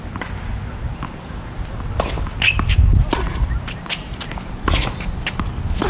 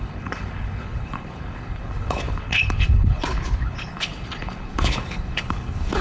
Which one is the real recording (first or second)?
first